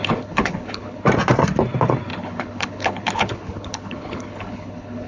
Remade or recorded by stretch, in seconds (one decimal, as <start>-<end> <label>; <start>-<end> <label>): 0.0-1.0 remade; 1.0-2.1 recorded; 2.1-5.1 remade